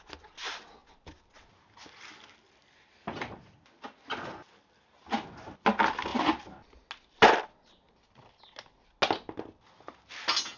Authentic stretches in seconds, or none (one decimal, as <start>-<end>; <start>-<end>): 0.0-10.6